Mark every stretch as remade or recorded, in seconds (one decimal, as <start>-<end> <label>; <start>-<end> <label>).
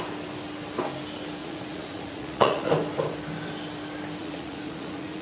0.0-1.4 recorded; 1.4-2.7 remade; 2.7-4.2 recorded; 4.2-5.2 remade